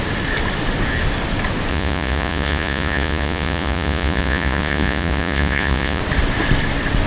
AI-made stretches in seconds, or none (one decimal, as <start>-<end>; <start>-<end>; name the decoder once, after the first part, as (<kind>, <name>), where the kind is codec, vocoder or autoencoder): 1.7-6.0 (vocoder, Vocos)